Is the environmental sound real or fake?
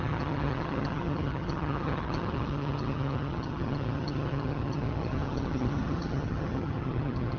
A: fake